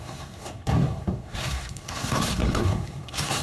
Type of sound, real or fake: fake